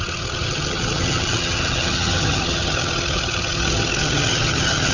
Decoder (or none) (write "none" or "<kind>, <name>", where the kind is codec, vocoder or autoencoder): vocoder, HiFi-GAN